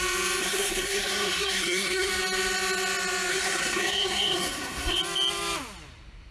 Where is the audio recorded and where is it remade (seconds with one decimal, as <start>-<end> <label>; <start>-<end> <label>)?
0.0-0.4 recorded; 0.4-2.1 remade; 2.1-3.3 recorded; 3.3-5.0 remade; 5.0-6.3 recorded